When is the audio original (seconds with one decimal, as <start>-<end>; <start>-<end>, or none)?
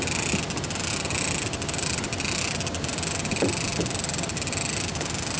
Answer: 0.0-5.4